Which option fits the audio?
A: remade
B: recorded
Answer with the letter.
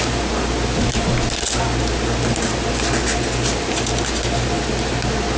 B